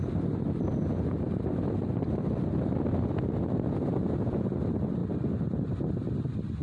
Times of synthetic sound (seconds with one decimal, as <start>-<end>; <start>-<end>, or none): none